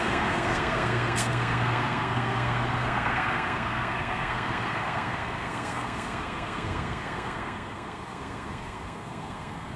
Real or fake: fake